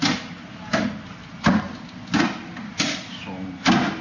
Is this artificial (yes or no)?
no